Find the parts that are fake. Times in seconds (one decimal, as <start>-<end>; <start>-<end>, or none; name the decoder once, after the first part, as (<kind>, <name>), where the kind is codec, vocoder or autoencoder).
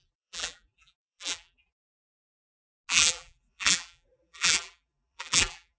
0.0-2.1 (vocoder, BigVGAN v2); 2.9-5.8